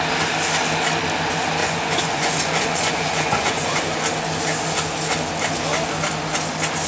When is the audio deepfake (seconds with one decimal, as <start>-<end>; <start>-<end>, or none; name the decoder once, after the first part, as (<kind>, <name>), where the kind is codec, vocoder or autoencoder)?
1.6-3.8 (vocoder, Vocos)